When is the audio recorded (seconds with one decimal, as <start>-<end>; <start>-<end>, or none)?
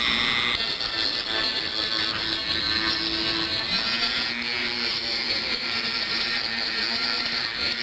0.0-4.6